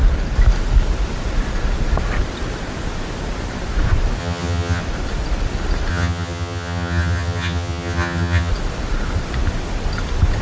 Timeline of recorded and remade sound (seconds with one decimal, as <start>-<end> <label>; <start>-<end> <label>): 0.0-4.2 recorded; 4.2-4.8 remade; 4.8-5.9 recorded; 5.9-8.5 remade; 8.5-10.4 recorded